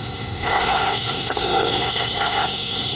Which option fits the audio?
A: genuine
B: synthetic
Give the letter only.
B